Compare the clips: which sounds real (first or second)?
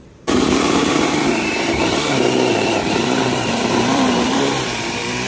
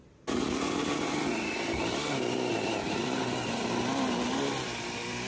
second